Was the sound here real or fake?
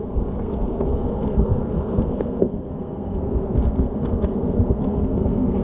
fake